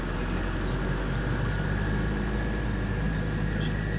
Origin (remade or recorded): recorded